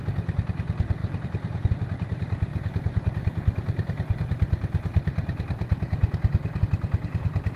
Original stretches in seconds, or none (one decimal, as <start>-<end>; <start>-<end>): 0.0-1.0; 1.7-7.6